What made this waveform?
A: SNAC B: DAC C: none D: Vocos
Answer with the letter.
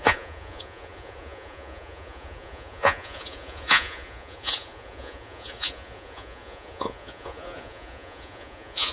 D